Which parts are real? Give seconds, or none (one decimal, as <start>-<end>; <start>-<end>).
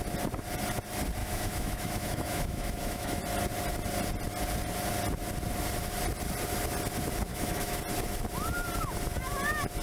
0.0-1.2; 3.2-7.3; 7.8-9.8